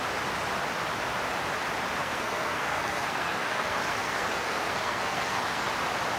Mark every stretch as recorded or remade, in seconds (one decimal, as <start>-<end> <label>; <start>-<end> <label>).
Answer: 0.0-2.0 recorded; 2.0-5.7 remade; 5.7-6.2 recorded